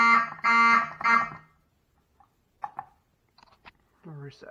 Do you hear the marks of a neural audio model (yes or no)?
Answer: no